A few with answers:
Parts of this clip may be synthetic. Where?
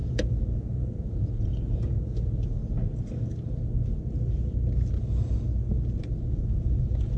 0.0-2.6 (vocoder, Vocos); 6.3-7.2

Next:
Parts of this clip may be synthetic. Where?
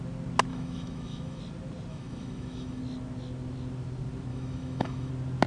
0.5-1.4 (autoencoder, DAC-VAE); 1.9-2.8; 4.3-5.1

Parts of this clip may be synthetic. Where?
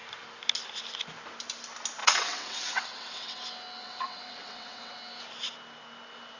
2.0-3.4 (vocoder, WaveNeXt); 3.8-4.9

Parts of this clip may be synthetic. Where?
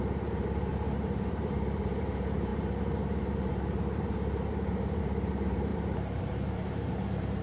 0.0-0.7 (vocoder, BigVGAN v2); 1.2-7.4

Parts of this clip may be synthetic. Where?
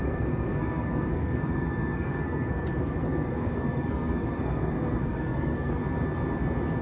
0.0-5.8 (codec, SNAC)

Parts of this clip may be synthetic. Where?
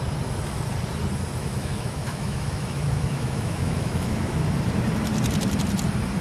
1.4-4.4 (autoencoder, DAC-VAE)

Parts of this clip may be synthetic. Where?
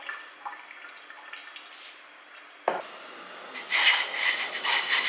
0.0-1.4 (vocoder, BigVGAN v2); 4.5-5.1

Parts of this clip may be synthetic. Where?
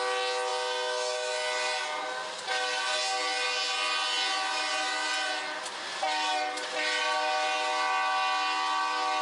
none